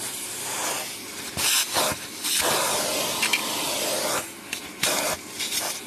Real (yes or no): yes